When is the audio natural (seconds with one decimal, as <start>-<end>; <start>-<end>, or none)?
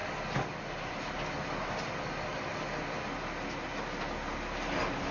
0.0-5.1